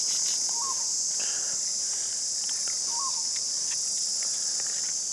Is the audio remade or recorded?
recorded